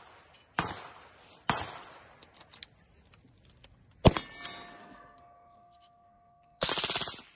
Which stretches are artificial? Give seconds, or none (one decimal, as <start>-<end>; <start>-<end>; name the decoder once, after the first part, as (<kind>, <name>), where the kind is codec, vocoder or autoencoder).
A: 4.8-6.7 (codec, SNAC)